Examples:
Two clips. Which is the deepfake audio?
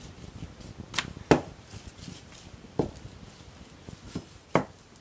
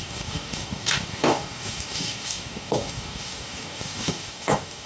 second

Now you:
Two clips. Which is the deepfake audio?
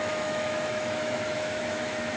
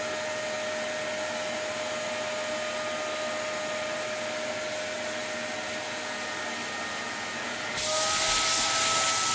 first